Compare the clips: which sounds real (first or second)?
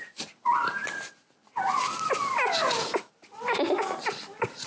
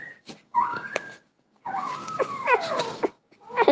first